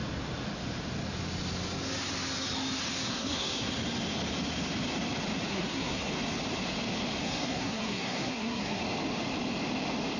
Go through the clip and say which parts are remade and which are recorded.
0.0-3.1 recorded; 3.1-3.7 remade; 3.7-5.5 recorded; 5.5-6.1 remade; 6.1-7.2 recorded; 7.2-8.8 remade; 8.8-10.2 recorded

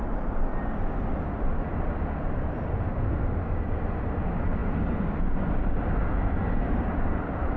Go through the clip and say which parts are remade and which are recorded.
0.0-2.9 recorded; 2.9-3.7 remade; 3.7-7.6 recorded

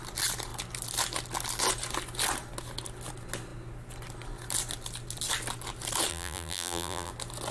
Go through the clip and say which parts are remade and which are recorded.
0.0-6.1 recorded; 6.1-7.1 remade; 7.1-7.5 recorded

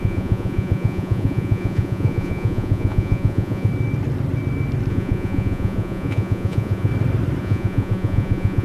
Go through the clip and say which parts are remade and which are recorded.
0.0-3.7 remade; 3.7-4.9 recorded; 4.9-6.9 remade; 6.9-7.4 recorded; 7.4-8.6 remade

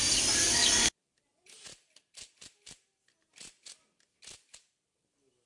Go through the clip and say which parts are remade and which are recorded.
0.0-5.5 recorded

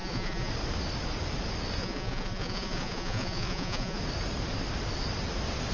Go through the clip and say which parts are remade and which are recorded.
0.0-0.5 remade; 0.5-1.8 recorded; 1.8-4.0 remade; 4.0-5.7 recorded